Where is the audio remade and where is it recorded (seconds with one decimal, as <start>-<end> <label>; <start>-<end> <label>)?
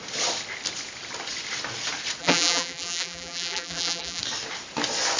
0.0-2.2 recorded; 2.2-4.2 remade; 4.2-5.2 recorded